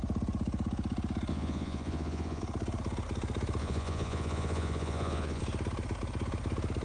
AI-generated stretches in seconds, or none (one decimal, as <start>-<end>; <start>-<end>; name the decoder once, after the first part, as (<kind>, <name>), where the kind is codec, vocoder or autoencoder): 1.3-2.4 (vocoder, Vocos); 3.6-5.4

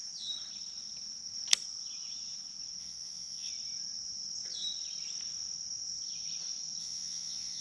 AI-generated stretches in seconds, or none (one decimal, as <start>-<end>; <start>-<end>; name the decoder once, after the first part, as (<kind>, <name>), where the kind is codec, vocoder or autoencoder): 2.8-3.5 (vocoder, Vocos); 6.8-7.6

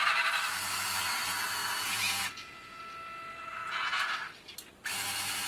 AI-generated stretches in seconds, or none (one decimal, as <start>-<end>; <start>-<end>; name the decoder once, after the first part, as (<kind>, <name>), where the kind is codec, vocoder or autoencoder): 1.6-2.8 (vocoder, Vocos); 3.6-4.1

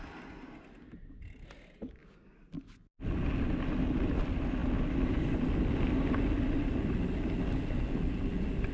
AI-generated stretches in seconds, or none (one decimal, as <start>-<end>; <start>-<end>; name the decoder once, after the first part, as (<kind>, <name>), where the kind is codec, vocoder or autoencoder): none

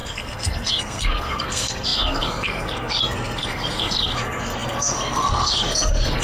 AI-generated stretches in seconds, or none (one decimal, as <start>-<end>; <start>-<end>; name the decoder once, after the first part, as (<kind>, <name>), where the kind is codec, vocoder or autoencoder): 0.0-6.2 (codec, SNAC)